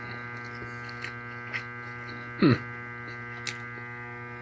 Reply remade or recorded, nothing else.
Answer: recorded